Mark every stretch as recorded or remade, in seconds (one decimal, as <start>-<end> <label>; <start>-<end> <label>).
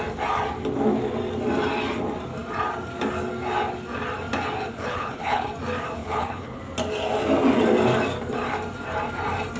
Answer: 0.0-4.7 recorded; 4.7-5.5 remade; 5.5-6.0 recorded; 6.0-6.6 remade; 6.6-9.6 recorded